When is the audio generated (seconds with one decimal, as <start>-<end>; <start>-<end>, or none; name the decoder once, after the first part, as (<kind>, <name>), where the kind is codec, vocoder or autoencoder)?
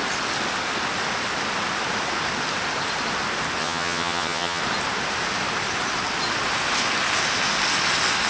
3.6-4.6 (vocoder, HiFi-GAN)